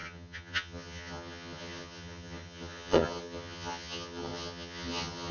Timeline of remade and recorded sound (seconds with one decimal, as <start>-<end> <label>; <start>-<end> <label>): 0.0-5.3 remade